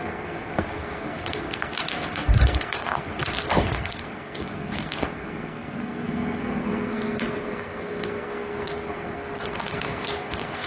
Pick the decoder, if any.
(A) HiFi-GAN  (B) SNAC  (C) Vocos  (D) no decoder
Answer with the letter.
B